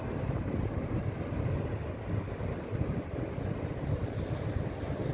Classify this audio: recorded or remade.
recorded